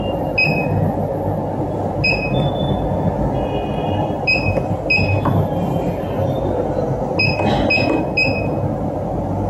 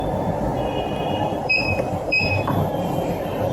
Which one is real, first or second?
first